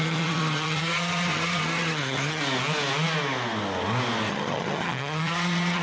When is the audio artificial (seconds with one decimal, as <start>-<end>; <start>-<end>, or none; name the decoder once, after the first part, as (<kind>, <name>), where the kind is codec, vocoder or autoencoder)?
0.0-2.4 (vocoder, HiFi-GAN); 4.3-5.8